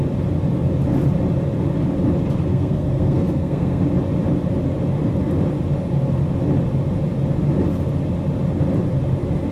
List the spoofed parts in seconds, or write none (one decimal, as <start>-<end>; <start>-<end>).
2.5-3.8